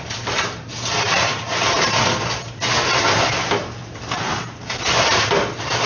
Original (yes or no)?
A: yes